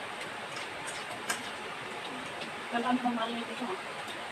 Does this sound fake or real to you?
fake